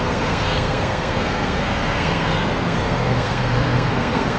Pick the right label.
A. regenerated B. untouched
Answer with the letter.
A